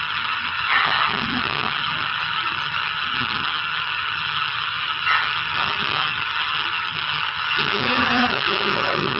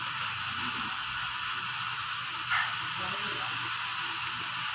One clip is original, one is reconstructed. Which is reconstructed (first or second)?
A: first